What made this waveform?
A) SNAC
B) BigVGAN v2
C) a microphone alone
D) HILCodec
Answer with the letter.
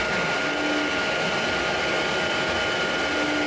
C